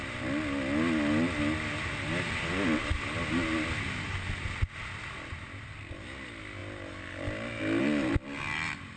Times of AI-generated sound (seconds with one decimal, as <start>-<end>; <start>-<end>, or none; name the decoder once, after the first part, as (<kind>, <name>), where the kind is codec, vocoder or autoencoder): none